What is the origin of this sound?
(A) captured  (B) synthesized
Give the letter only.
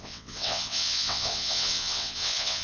B